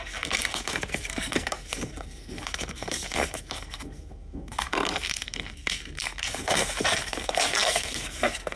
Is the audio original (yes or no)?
no